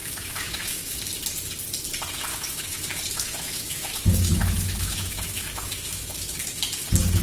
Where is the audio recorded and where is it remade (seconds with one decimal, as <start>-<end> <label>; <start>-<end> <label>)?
0.0-1.0 remade; 1.0-2.3 recorded; 2.3-6.6 remade; 6.6-7.2 recorded